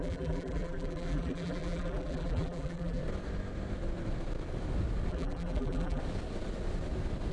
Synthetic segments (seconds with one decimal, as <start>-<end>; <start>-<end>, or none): 0.0-3.0; 5.1-6.0